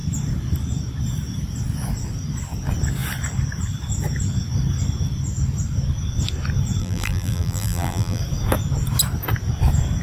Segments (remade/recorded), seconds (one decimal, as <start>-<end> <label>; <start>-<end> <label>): 0.0-6.8 recorded; 6.8-8.2 remade; 8.2-10.0 recorded